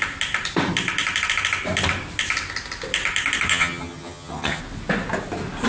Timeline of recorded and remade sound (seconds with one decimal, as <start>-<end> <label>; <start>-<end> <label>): 0.0-3.5 recorded; 3.5-4.6 remade; 4.6-5.7 recorded